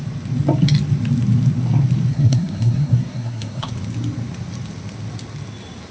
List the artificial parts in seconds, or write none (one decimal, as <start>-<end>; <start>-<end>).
2.1-3.7